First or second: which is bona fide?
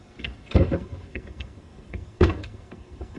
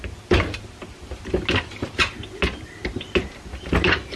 second